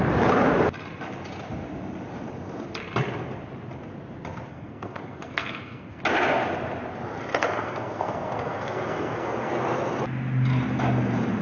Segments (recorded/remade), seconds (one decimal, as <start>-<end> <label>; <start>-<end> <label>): 0.0-4.5 recorded; 4.5-6.0 remade; 6.0-7.3 recorded; 7.3-9.5 remade; 9.5-11.4 recorded